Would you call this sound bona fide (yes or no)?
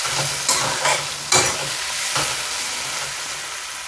yes